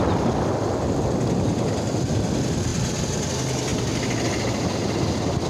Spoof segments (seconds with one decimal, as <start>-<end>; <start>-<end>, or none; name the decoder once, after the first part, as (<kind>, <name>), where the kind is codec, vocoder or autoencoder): none